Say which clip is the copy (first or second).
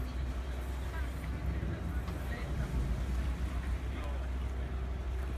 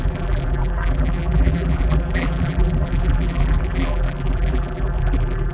second